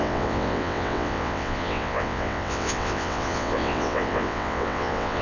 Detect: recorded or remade remade